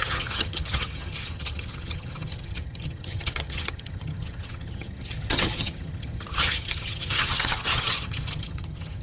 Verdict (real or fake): fake